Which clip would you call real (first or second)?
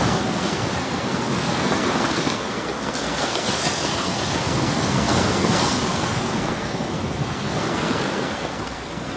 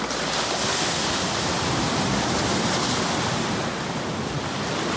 second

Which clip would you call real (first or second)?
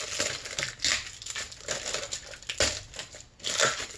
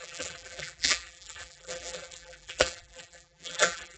first